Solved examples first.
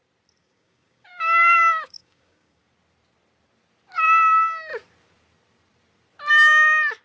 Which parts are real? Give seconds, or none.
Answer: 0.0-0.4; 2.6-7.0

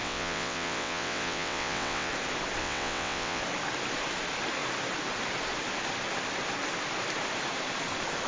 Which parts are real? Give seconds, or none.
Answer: 2.1-2.6; 3.4-8.3